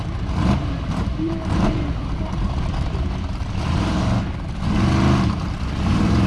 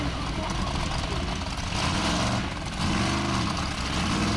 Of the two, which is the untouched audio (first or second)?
second